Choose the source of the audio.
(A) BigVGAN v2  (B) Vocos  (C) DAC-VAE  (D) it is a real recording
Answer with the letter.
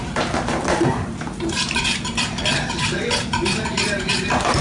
A